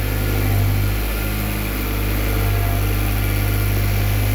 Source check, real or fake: real